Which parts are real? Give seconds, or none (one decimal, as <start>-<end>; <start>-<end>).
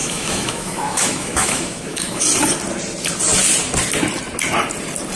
2.2-5.2